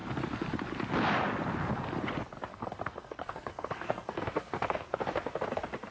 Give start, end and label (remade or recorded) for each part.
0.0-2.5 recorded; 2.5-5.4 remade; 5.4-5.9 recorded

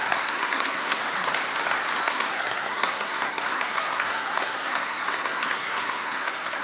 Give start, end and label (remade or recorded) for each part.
0.0-1.0 remade; 1.0-2.0 recorded; 2.0-6.6 remade

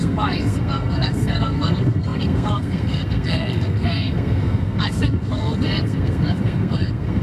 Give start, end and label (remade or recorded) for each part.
0.0-7.2 remade

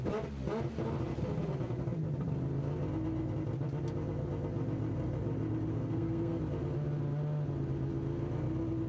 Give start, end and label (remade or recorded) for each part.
0.0-5.7 recorded; 5.7-6.4 remade; 6.4-8.9 recorded